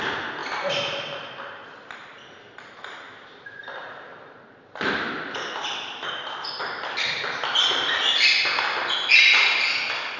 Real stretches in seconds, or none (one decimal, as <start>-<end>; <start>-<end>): 0.0-10.2

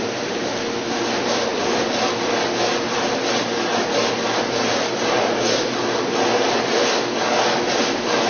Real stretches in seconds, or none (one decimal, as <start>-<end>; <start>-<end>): 0.0-6.3; 6.8-8.3

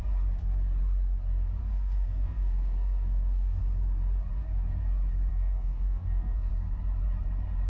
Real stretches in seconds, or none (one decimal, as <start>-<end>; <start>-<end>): 0.0-1.6; 3.6-5.3; 6.5-7.7

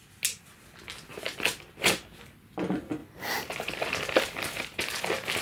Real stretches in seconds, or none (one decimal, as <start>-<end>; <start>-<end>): 0.0-1.1; 1.7-3.0; 5.0-5.4

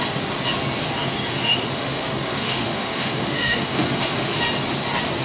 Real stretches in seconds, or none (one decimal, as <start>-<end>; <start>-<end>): 0.0-1.3; 4.4-5.2

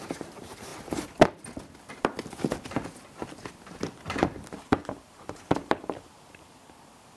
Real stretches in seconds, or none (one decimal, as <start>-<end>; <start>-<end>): 0.7-4.5